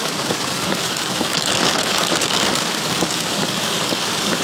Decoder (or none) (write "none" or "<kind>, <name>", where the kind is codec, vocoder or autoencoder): codec, DAC